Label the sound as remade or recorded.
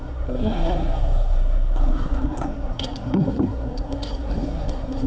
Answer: remade